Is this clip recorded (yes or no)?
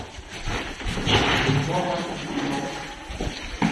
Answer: yes